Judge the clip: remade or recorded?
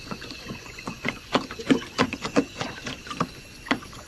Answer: remade